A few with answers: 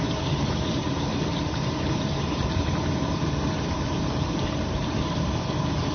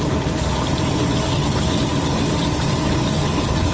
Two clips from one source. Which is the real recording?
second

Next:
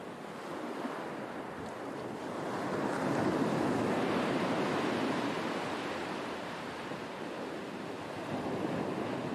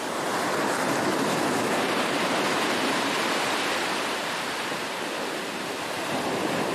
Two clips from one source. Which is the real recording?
first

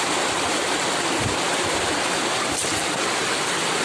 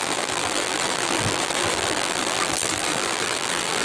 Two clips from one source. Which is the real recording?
first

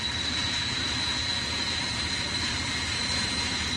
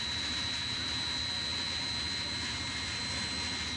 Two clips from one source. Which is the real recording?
second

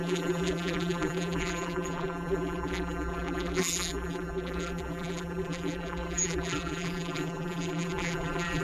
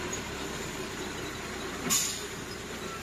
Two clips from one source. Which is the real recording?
second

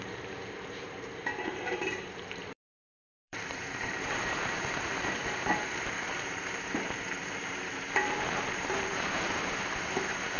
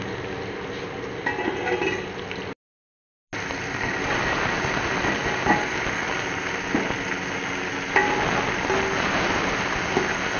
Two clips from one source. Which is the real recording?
second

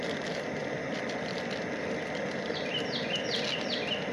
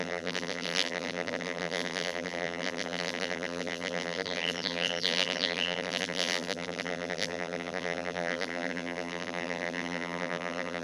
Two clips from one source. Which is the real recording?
first